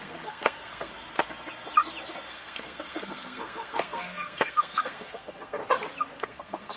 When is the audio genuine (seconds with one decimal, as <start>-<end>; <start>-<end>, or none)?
0.9-2.3; 5.6-6.2